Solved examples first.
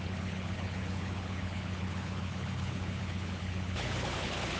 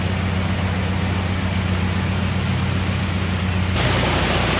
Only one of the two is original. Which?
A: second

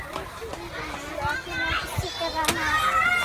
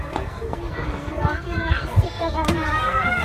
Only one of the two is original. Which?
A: first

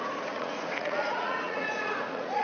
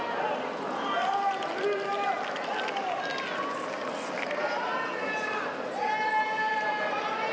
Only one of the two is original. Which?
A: second